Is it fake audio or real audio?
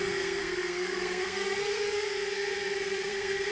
fake